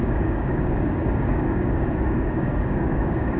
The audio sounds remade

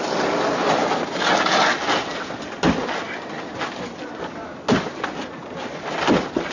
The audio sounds recorded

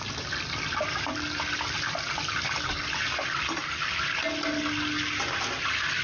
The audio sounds recorded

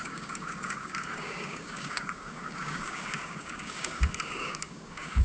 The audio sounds remade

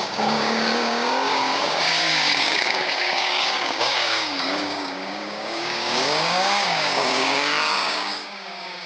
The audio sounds remade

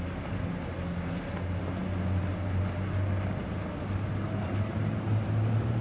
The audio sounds recorded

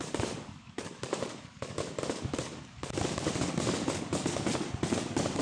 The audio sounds remade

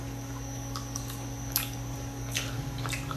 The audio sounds remade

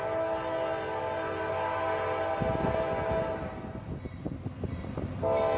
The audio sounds recorded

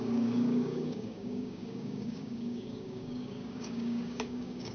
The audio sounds remade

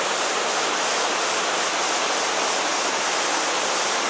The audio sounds recorded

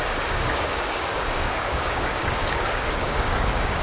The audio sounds remade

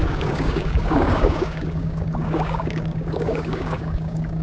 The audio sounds remade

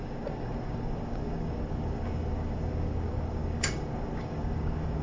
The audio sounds remade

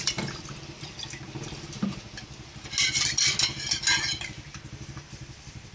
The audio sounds recorded